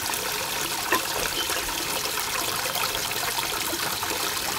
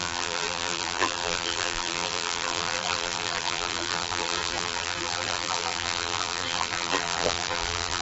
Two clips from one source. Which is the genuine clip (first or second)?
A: first